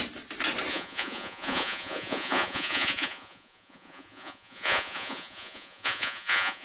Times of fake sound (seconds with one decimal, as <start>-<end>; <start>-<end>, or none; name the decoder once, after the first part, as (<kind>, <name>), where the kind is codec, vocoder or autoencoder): 0.7-6.6 (vocoder, Vocos)